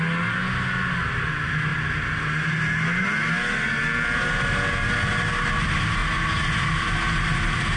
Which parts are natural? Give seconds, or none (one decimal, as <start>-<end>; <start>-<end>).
0.0-7.8